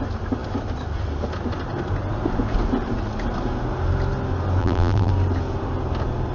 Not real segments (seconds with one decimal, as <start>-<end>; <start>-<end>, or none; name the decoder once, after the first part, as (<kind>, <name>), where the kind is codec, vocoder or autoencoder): 4.6-5.1 (vocoder, BigVGAN v2)